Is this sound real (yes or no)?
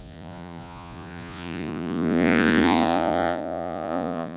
no